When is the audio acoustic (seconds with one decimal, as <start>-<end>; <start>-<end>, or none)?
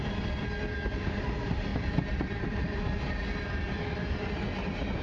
0.0-1.7; 2.6-5.0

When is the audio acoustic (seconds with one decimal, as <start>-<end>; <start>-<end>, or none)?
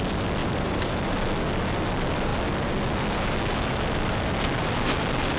0.0-0.4; 0.9-5.4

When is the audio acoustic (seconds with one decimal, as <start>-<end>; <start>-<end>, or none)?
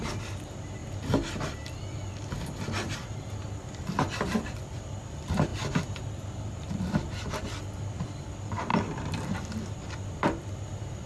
0.8-4.2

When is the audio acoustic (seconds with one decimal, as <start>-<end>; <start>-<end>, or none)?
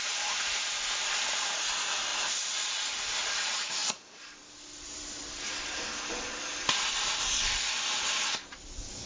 0.0-9.1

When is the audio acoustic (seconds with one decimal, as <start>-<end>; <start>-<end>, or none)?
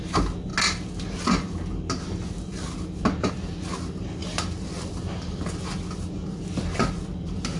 0.0-4.2; 4.9-7.6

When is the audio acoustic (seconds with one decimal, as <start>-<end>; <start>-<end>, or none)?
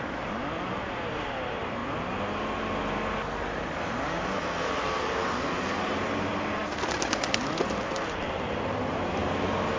1.8-5.7; 6.6-7.7; 9.2-9.8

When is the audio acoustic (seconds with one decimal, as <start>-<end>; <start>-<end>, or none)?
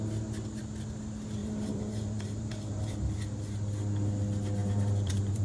0.0-1.4; 2.9-4.6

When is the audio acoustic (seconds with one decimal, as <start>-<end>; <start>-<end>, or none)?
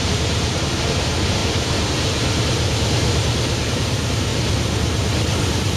1.4-3.7; 4.3-5.8